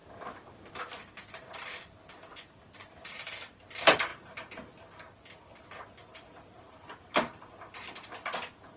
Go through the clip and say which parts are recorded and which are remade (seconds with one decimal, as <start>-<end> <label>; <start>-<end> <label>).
0.0-4.1 remade; 4.1-8.8 recorded